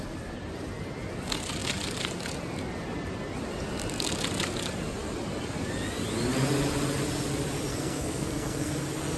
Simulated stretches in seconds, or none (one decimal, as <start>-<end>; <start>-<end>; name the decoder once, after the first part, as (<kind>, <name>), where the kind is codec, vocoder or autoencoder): 7.7-8.7 (codec, SNAC)